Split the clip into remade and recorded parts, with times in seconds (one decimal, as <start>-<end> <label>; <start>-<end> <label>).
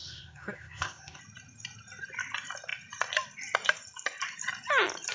0.0-1.2 remade; 1.2-5.1 recorded